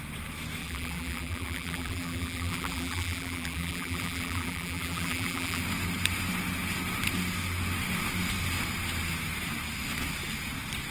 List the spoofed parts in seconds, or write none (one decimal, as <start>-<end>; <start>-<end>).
0.6-5.6